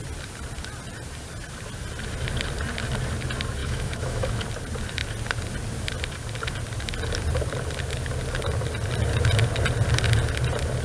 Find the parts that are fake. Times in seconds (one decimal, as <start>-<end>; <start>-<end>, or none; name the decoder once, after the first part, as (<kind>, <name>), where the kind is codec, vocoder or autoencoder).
3.6-4.3 (autoencoder, DAC-VAE)